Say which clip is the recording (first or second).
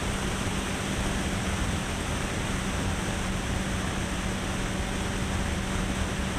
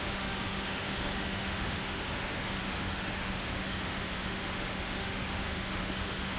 first